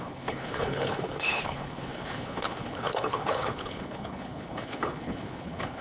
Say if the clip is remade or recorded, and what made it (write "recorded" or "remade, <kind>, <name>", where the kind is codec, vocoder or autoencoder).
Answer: remade, codec, HILCodec